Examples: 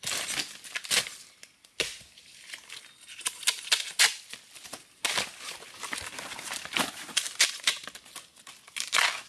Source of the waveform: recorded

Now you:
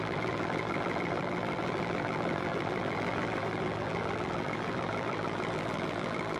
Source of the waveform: remade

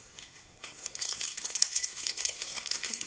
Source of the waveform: remade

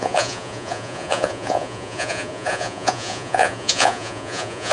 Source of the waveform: remade